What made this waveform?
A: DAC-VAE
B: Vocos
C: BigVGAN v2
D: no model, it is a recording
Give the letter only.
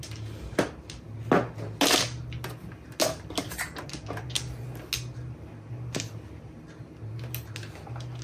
D